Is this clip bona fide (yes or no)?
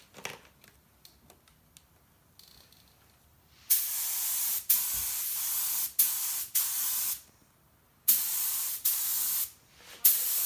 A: yes